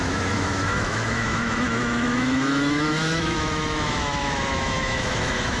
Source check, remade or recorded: remade